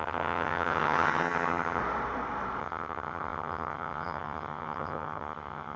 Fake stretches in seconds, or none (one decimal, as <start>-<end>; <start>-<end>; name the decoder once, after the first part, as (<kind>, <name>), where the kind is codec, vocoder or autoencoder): 0.0-1.8 (vocoder, HiFi-GAN); 2.6-5.8